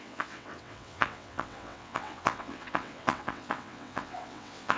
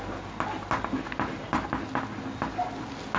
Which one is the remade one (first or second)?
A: first